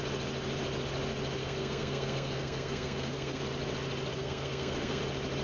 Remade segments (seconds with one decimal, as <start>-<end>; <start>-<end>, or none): 1.4-3.4; 4.1-5.0